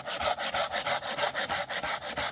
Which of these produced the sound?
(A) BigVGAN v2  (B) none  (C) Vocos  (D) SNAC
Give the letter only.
B